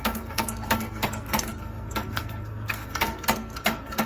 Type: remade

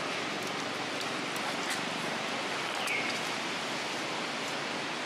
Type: recorded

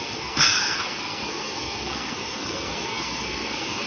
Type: remade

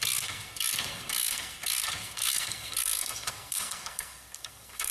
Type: remade